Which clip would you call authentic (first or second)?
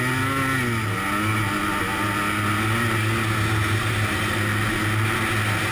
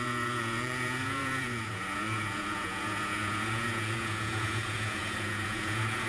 first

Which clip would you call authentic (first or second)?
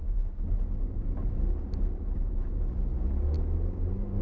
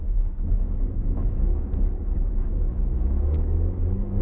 first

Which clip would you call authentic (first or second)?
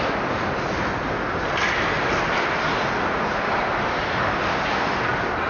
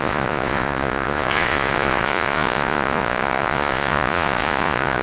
first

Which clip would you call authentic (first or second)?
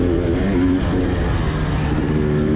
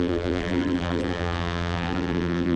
first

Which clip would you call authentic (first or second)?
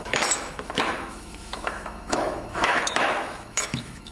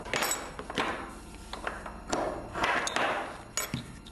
second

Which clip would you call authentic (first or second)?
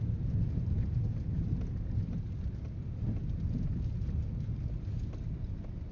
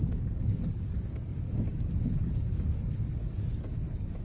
first